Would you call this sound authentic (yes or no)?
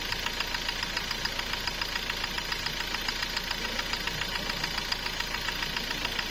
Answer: yes